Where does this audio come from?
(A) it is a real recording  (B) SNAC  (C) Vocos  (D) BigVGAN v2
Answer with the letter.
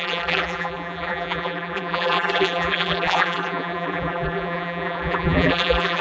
D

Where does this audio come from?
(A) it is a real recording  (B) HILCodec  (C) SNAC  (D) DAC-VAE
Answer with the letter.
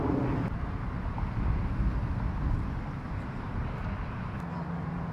A